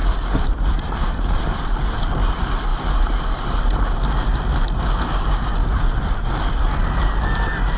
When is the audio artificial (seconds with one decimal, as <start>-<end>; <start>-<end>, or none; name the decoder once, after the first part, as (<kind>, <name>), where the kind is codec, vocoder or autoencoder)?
0.0-1.4 (vocoder, BigVGAN v2)